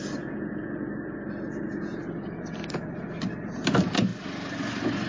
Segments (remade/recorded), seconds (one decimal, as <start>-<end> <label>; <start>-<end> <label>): 0.0-5.1 recorded

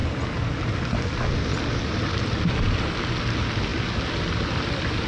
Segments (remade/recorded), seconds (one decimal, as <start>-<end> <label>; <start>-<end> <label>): 0.0-5.1 recorded

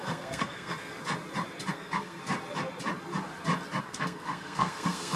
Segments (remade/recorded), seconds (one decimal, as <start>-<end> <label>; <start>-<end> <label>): 0.0-0.9 remade; 0.9-1.7 recorded; 1.7-2.2 remade; 2.2-3.8 recorded; 3.8-5.2 remade

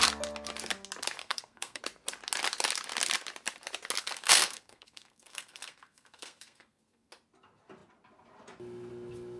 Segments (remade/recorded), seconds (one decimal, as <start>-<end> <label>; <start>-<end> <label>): 0.0-1.2 recorded; 1.2-1.8 remade; 1.8-4.0 recorded; 4.0-7.1 remade; 7.1-9.4 recorded

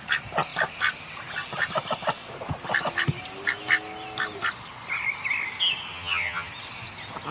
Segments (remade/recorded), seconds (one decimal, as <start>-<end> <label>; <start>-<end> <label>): 0.0-5.9 recorded; 5.9-6.5 remade; 6.5-7.3 recorded

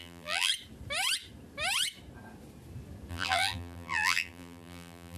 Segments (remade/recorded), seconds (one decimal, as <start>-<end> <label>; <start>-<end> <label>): 0.0-0.5 remade; 0.5-3.1 recorded; 3.1-5.2 remade

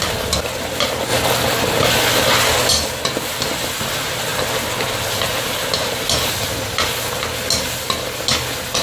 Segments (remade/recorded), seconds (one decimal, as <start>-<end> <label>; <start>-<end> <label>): 0.0-8.8 recorded

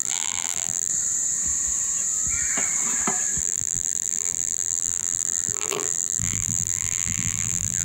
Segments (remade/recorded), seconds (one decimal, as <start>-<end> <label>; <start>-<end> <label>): 0.0-0.9 remade; 0.9-3.4 recorded; 3.4-7.8 remade